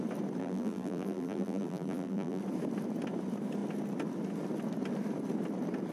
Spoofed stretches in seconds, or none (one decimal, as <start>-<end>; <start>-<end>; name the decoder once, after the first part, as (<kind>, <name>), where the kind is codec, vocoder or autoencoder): 0.4-2.4 (vocoder, BigVGAN v2)